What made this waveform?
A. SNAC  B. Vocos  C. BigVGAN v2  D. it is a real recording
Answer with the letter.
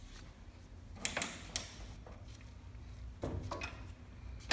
D